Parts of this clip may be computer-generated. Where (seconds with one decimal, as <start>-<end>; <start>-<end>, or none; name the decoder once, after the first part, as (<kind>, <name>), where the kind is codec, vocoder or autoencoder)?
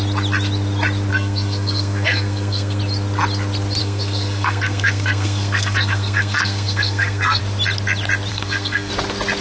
1.1-2.8 (codec, SNAC); 3.8-7.4; 8.3-8.9